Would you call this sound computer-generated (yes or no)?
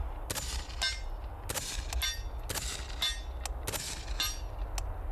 no